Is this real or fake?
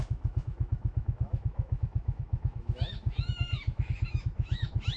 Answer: fake